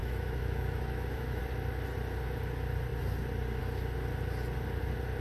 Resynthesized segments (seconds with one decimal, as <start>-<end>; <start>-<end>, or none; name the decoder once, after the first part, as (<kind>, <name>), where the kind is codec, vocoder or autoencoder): 0.0-1.4 (autoencoder, DAC-VAE)